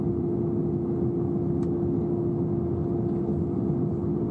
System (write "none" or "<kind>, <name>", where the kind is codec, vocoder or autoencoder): none